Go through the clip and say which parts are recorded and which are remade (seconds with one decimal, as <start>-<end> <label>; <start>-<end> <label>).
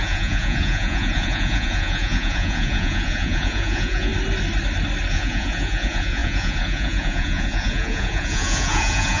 0.0-4.1 remade; 4.1-5.1 recorded; 5.1-9.2 remade